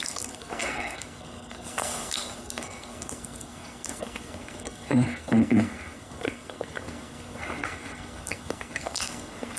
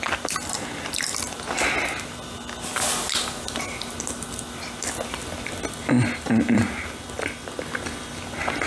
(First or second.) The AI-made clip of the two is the first